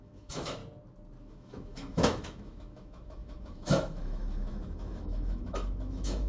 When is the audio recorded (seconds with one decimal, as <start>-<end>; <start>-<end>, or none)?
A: 0.6-1.2